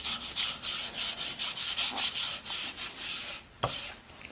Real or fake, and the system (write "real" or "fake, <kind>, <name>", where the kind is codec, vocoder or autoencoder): real